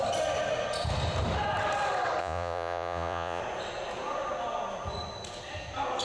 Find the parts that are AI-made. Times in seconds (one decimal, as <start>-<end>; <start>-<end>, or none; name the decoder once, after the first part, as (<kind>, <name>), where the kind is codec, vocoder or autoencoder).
2.2-3.4 (vocoder, Vocos)